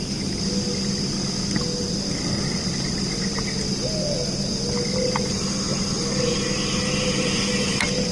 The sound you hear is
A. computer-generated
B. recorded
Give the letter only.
B